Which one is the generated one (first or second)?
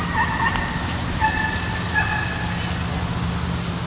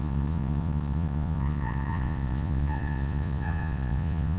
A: second